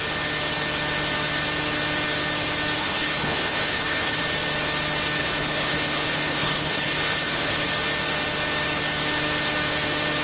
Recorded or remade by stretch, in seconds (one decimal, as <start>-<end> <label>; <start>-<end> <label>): 0.0-2.8 recorded; 2.8-4.2 remade; 4.2-5.2 recorded; 5.2-7.7 remade; 7.7-10.2 recorded